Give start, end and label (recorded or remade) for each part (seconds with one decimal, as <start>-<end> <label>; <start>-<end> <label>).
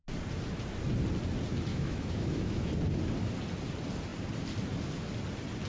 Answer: 0.0-1.7 recorded; 1.7-2.7 remade; 2.7-5.7 recorded